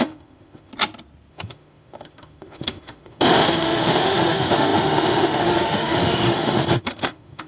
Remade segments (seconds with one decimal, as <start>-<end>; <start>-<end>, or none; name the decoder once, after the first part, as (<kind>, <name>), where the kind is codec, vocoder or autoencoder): 0.0-0.7 (autoencoder, DAC-VAE); 1.3-7.5